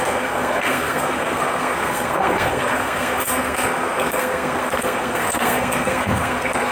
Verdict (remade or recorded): remade